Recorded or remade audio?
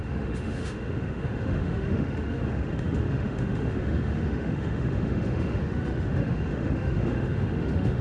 remade